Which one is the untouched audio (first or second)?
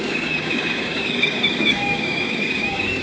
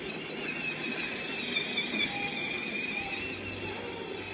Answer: second